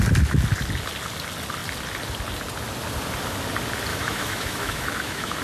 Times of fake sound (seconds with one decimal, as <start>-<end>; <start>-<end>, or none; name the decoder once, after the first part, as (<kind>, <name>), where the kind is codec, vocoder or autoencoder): 3.9-5.4 (autoencoder, DAC-VAE)